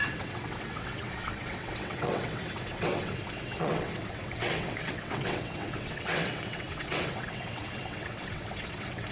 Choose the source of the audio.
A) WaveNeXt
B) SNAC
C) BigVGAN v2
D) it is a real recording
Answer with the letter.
A